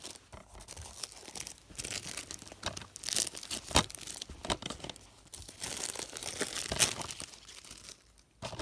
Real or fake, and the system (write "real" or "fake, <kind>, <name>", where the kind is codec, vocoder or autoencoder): real